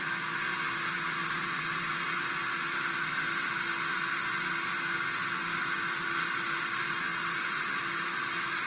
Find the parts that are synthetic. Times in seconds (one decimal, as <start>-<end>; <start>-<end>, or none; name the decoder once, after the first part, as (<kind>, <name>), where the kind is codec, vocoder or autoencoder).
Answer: 7.1-8.7 (vocoder, BigVGAN v2)